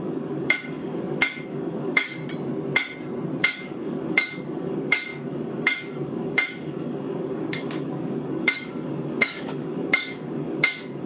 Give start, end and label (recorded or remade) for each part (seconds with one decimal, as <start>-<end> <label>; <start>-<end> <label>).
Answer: 0.0-2.2 remade; 2.2-3.4 recorded; 3.4-11.1 remade